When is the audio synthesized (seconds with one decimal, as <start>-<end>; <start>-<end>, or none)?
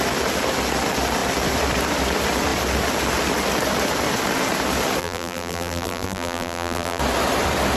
5.0-7.0